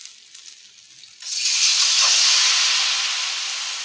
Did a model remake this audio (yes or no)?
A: no